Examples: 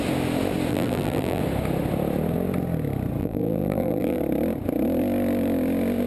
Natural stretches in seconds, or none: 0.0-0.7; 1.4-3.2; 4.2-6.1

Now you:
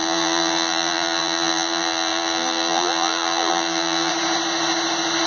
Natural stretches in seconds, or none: 4.1-5.3

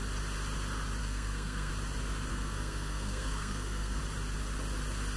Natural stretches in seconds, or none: 0.0-1.0; 1.7-2.3; 4.0-5.2

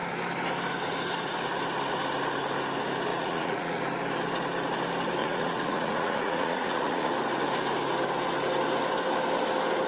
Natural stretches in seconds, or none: 0.0-3.1; 3.8-5.2; 7.1-9.9

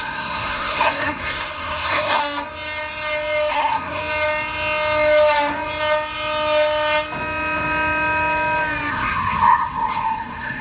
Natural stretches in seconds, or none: 2.2-3.5; 4.0-8.9

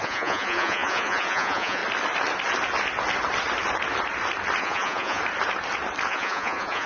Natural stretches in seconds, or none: 1.8-4.6; 5.2-6.1